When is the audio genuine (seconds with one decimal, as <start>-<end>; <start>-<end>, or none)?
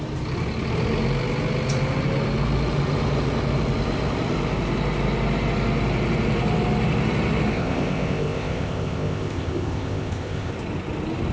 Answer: 0.0-7.5; 10.5-11.3